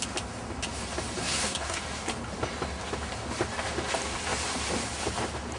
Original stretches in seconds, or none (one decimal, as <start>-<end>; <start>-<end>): 0.0-1.2; 1.8-5.6

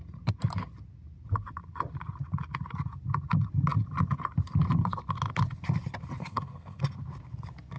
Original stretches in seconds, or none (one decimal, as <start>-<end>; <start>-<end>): 0.0-6.2; 6.8-7.8

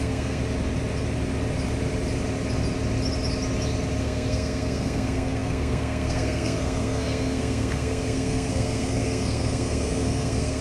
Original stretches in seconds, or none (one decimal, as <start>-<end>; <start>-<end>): 0.4-4.0

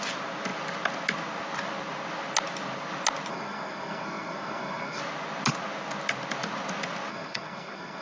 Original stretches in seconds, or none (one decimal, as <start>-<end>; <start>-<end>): 0.0-3.3; 5.0-7.1

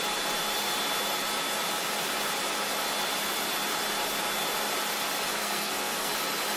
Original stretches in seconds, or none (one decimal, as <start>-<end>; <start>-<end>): 0.0-5.4; 6.1-6.6